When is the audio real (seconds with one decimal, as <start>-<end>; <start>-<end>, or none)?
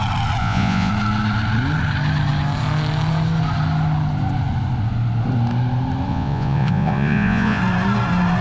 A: 0.0-0.4; 0.9-6.1; 7.6-8.4